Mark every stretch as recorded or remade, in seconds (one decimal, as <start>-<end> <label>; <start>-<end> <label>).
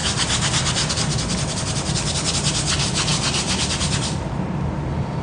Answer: 0.0-0.9 remade; 0.9-5.2 recorded